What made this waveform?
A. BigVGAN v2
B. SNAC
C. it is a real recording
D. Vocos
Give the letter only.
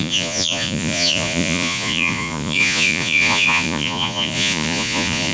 D